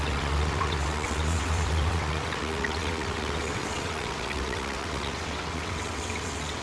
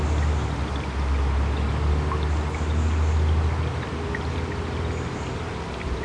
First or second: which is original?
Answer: second